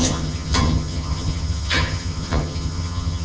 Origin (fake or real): fake